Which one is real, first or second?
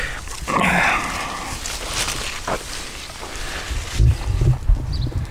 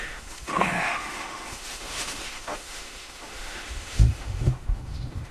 first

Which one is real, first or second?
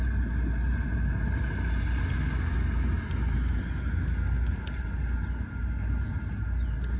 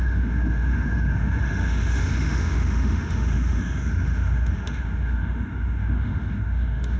first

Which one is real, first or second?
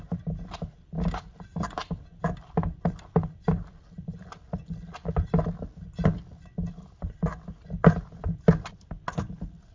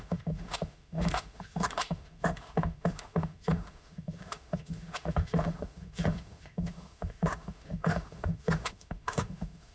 first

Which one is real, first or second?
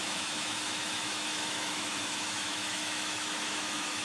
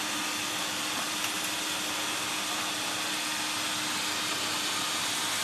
second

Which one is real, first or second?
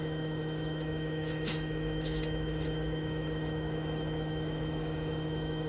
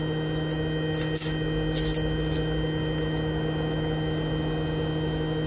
second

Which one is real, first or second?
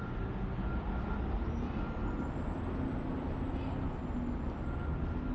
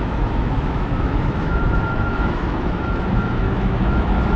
first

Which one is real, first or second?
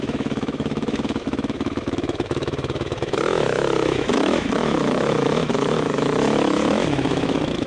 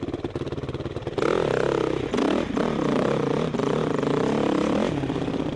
second